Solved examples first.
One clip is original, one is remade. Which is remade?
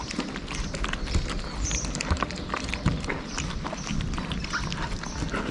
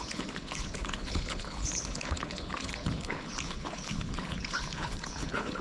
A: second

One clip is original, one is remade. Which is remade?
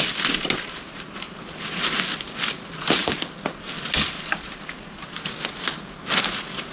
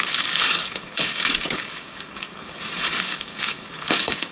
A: second